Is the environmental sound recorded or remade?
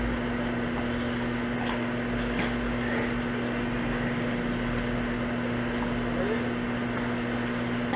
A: recorded